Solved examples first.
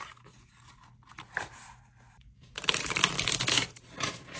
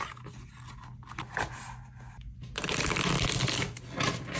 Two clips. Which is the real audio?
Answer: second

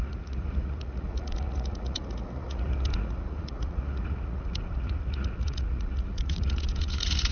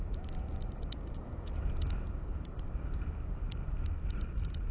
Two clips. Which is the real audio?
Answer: second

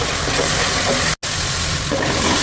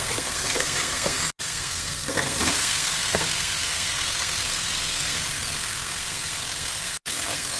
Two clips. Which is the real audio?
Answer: first